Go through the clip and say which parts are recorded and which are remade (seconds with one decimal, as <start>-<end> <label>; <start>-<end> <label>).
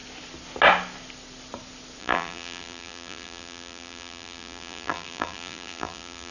0.0-2.0 recorded; 2.0-6.3 remade